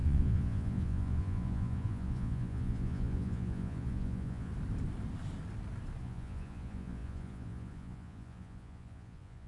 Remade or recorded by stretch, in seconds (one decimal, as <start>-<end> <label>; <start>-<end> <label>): 0.0-4.5 remade; 4.5-6.0 recorded; 6.0-9.5 remade

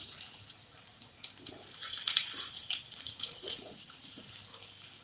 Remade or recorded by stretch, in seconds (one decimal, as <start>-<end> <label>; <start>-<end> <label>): 0.0-1.2 remade; 1.2-1.8 recorded; 1.8-4.2 remade; 4.2-5.0 recorded

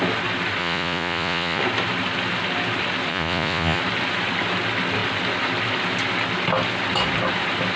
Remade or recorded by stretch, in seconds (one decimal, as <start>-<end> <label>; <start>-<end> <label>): 0.0-0.6 recorded; 0.6-1.6 remade; 1.6-3.1 recorded; 3.1-3.8 remade; 3.8-7.8 recorded

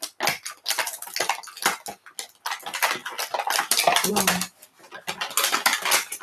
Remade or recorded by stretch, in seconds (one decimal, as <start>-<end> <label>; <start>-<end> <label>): 0.0-6.2 recorded

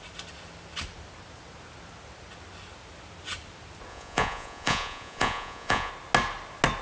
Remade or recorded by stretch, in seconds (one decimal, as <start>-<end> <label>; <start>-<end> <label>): 0.0-3.9 recorded; 3.9-5.9 remade; 5.9-6.8 recorded